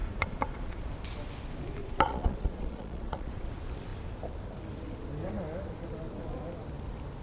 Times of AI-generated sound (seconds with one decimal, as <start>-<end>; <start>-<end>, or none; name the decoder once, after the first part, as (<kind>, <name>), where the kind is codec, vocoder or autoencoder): 0.0-0.9 (vocoder, Vocos); 1.8-3.5